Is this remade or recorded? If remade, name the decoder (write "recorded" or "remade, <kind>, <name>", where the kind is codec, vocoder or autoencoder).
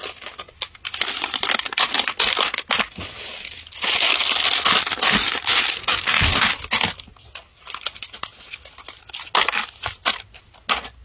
recorded